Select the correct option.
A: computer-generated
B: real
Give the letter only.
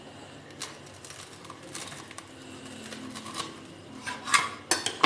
B